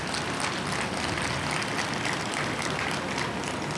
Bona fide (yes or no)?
yes